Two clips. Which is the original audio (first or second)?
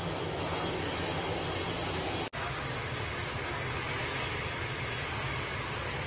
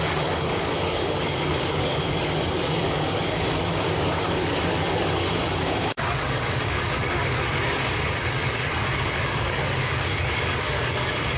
first